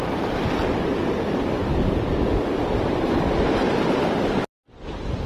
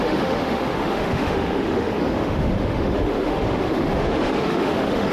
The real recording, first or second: first